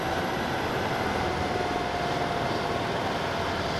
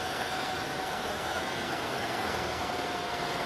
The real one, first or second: first